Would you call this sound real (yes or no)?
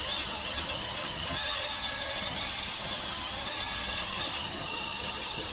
no